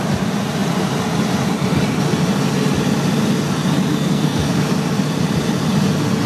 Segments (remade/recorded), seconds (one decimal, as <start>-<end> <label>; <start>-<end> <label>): 0.0-3.9 recorded; 3.9-4.5 remade; 4.5-6.3 recorded